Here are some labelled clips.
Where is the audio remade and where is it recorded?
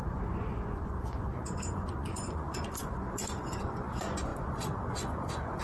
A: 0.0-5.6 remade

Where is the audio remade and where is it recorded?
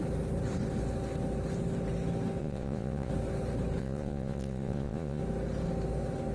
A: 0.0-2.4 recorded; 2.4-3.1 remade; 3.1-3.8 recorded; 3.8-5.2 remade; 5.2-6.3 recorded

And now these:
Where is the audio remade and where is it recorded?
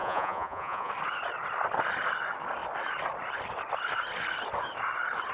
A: 0.0-0.9 remade; 0.9-5.3 recorded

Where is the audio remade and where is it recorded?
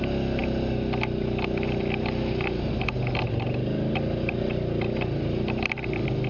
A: 0.0-6.3 recorded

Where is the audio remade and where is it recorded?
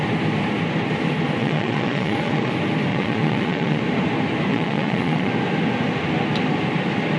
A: 0.0-1.4 recorded; 1.4-2.5 remade; 2.5-2.9 recorded; 2.9-3.8 remade; 3.8-4.5 recorded; 4.5-5.3 remade; 5.3-7.2 recorded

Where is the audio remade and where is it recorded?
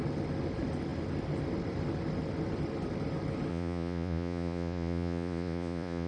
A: 0.0-3.5 recorded; 3.5-6.1 remade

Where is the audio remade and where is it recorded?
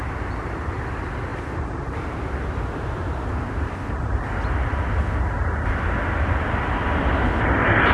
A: 0.0-7.9 recorded